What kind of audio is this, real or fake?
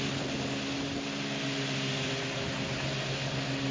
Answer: real